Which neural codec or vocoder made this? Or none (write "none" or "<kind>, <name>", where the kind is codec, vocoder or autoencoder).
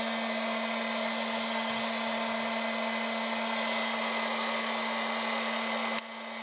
none